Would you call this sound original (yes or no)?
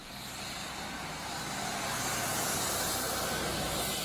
yes